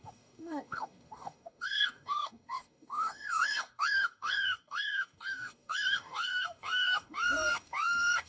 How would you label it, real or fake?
fake